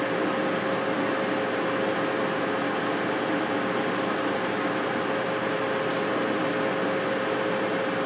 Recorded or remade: recorded